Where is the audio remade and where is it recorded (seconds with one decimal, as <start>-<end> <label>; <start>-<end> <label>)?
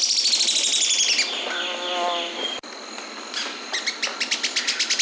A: 0.0-5.0 recorded